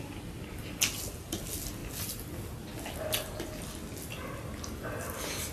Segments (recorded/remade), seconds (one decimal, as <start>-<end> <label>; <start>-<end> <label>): 0.0-5.5 recorded